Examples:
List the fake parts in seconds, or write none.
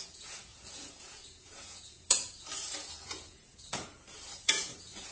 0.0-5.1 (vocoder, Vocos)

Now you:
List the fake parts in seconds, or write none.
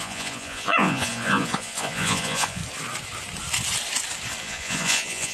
0.0-2.6 (vocoder, Vocos); 4.4-5.3